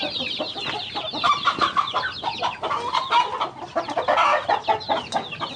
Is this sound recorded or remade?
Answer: recorded